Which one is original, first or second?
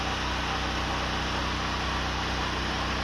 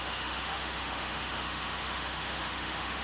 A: first